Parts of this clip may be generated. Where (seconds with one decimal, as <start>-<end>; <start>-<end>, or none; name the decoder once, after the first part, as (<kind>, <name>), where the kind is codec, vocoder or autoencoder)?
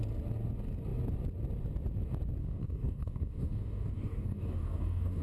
2.4-5.2 (codec, DAC)